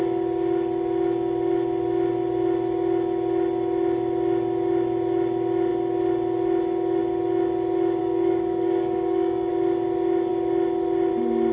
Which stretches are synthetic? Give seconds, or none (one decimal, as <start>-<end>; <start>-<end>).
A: 8.0-9.5